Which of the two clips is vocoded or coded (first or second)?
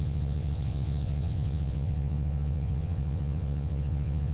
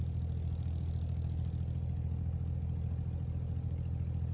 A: first